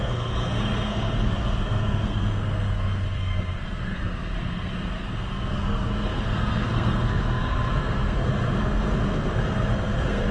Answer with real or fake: fake